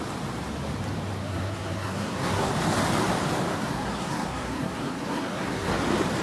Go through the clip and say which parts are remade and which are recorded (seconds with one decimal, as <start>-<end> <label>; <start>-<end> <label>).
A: 0.0-1.2 recorded; 1.2-2.5 remade; 2.5-3.5 recorded; 3.5-5.7 remade; 5.7-6.2 recorded